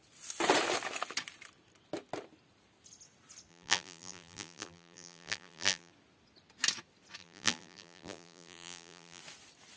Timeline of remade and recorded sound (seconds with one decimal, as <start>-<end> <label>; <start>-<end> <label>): 0.0-3.5 recorded; 3.5-5.9 remade; 5.9-7.2 recorded; 7.2-9.2 remade; 9.2-9.8 recorded